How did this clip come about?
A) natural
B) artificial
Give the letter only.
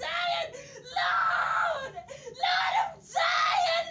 A